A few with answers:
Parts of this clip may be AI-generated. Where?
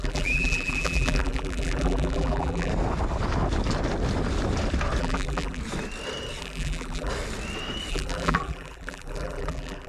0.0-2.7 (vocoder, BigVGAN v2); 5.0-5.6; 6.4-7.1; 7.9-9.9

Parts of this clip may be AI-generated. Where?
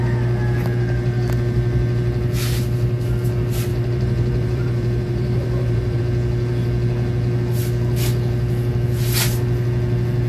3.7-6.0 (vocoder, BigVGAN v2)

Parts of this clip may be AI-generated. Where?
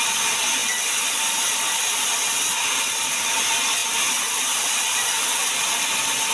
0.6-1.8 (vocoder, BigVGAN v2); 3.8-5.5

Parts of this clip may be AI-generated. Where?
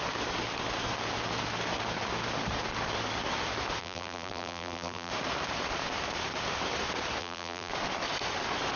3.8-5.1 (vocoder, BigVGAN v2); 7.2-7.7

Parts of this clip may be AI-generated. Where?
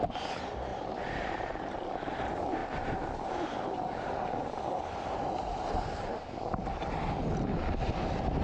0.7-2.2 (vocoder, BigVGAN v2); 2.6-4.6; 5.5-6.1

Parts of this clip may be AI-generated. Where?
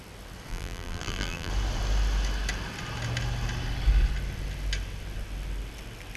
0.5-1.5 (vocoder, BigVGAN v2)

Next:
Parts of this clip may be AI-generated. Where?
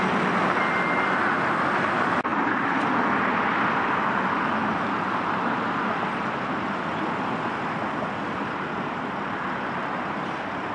none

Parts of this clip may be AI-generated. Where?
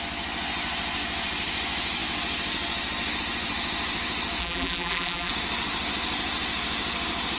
4.4-5.3 (vocoder, BigVGAN v2)